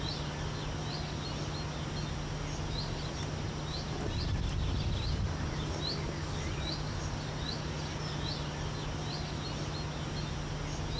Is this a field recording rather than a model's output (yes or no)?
yes